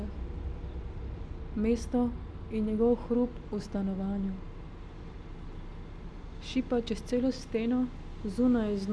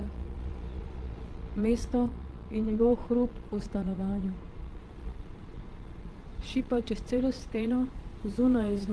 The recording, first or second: first